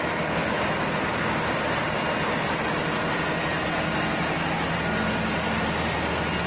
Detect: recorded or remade recorded